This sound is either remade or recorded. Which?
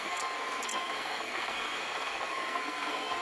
remade